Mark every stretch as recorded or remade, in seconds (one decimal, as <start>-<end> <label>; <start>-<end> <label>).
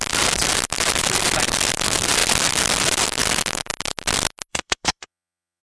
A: 0.0-4.5 recorded; 4.5-5.6 remade